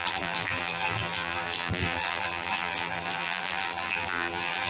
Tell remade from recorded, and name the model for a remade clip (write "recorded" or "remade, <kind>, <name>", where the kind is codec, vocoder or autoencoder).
remade, vocoder, BigVGAN v2